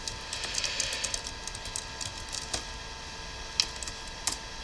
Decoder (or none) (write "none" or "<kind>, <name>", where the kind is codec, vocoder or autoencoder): none